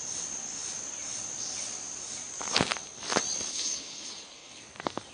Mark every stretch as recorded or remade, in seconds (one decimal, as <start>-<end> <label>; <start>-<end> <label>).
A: 0.0-3.5 recorded; 3.5-4.6 remade; 4.6-5.1 recorded